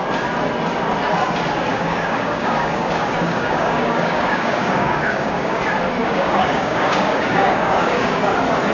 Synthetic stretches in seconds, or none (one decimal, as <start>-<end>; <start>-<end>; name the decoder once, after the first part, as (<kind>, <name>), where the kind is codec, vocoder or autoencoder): 1.7-5.6 (codec, DAC); 6.0-8.2